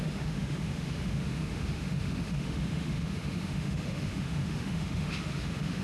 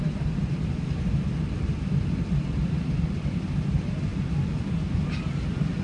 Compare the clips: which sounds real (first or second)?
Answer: second